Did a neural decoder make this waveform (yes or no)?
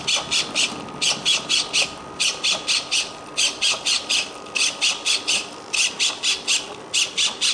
no